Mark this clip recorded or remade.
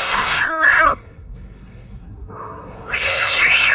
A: remade